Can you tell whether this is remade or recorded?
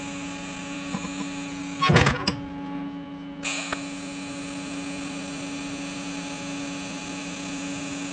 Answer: recorded